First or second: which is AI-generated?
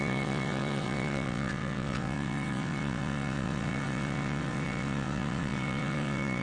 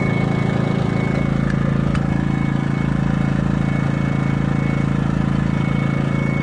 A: first